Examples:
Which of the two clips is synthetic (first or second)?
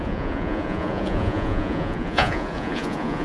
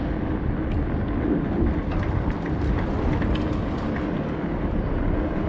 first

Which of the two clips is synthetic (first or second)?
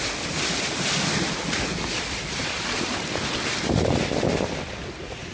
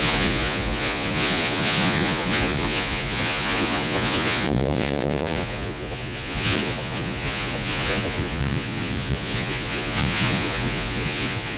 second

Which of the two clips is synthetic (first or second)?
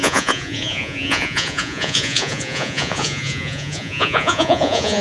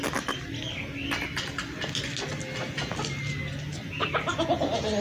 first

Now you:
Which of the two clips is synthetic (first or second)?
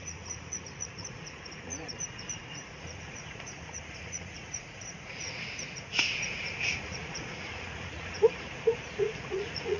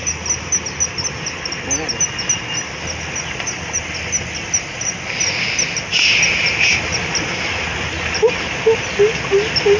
first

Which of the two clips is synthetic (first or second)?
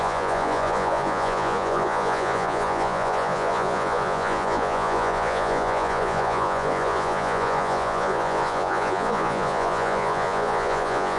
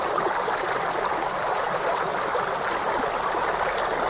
first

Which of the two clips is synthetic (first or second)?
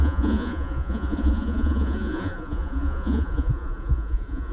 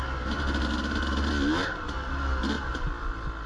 first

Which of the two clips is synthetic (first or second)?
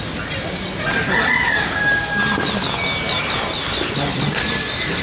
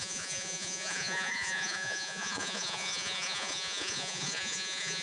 second